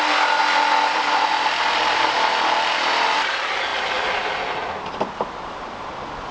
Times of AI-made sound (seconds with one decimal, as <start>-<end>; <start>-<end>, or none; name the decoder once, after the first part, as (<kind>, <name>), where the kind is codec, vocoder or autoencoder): none